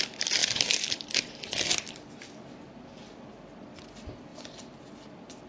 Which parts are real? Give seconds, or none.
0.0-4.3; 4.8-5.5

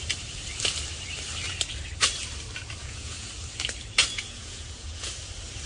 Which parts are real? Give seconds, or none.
0.0-2.8; 3.3-4.0; 5.1-5.7

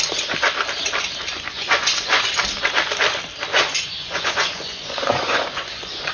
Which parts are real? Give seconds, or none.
0.0-1.3; 2.3-3.5

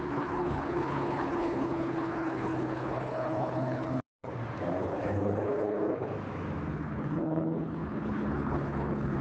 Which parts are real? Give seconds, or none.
4.3-4.8; 6.1-6.7

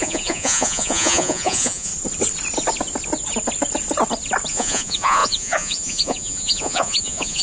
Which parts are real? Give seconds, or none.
1.9-4.5

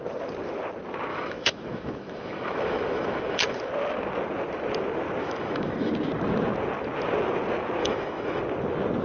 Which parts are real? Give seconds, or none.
0.0-1.1; 3.7-5.2; 5.9-7.8; 8.4-9.0